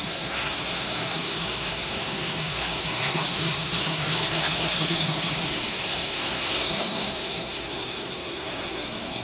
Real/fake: fake